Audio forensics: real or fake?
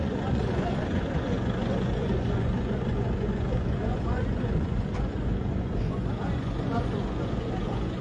fake